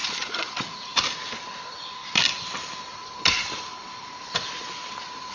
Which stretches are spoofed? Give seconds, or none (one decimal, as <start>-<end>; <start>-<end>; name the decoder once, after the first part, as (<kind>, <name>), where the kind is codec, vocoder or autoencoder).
0.0-1.0 (vocoder, Vocos)